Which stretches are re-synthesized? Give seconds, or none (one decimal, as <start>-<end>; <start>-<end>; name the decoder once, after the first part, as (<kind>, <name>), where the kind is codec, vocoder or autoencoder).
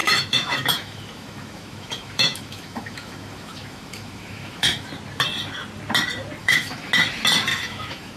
0.0-4.9 (autoencoder, DAC-VAE); 6.4-6.9; 7.5-8.2